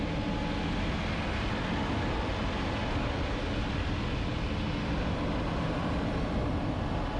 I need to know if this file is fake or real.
real